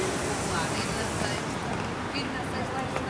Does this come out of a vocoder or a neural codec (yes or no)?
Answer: no